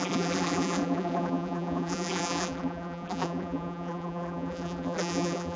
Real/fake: fake